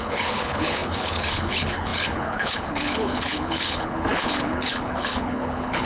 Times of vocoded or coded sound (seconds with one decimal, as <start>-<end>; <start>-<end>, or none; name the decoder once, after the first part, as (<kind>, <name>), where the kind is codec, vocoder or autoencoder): 0.0-5.9 (codec, HILCodec)